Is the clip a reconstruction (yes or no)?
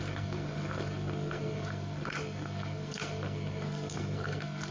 yes